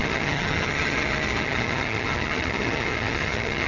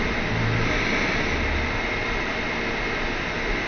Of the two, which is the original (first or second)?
second